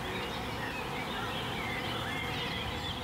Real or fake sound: real